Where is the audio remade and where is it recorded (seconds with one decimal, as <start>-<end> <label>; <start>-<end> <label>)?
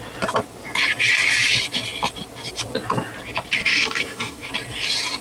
0.0-3.6 recorded; 3.6-4.5 remade; 4.5-5.2 recorded